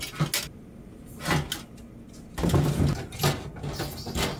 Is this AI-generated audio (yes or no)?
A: no